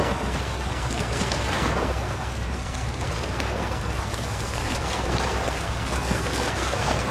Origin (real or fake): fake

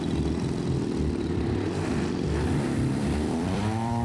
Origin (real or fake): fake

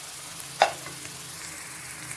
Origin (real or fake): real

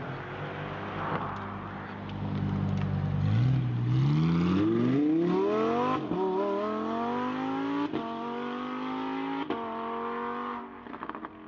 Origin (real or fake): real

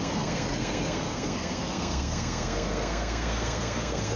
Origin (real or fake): fake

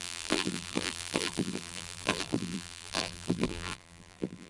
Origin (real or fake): fake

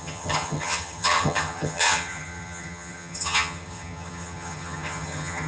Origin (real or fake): fake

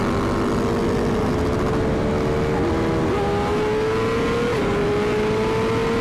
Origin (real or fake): real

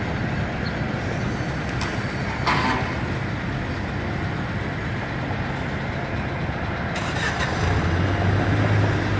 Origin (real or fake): real